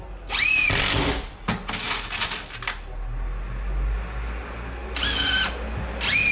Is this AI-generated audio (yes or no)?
no